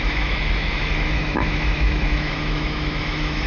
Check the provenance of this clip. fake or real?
fake